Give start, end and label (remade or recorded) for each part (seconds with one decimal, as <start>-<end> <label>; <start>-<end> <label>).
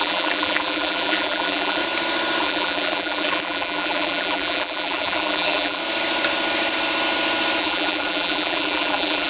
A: 0.0-1.8 remade; 1.8-2.4 recorded; 2.4-5.8 remade; 5.8-7.6 recorded; 7.6-9.3 remade